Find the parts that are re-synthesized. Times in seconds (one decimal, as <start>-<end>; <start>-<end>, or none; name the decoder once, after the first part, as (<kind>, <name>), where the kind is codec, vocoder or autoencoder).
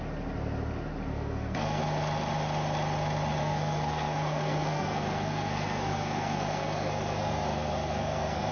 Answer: 1.1-1.8 (codec, SNAC); 3.4-8.5